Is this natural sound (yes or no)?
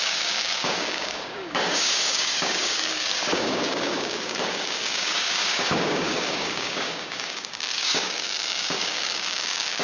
no